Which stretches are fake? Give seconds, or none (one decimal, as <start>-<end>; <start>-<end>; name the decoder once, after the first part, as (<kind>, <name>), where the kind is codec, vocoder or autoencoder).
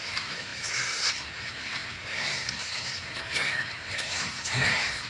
0.0-5.1 (codec, SNAC)